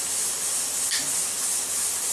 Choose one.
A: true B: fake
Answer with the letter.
A